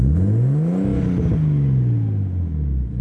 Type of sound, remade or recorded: recorded